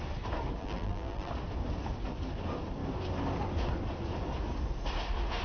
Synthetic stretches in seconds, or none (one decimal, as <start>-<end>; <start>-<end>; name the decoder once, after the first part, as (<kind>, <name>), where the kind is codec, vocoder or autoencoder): 0.6-1.3 (vocoder, BigVGAN v2)